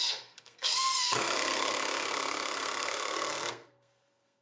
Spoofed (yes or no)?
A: yes